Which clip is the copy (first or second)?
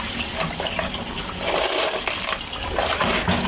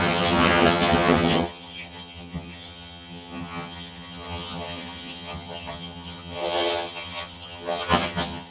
second